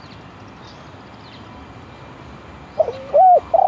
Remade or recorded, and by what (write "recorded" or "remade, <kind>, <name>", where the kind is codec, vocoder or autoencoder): remade, vocoder, BigVGAN v2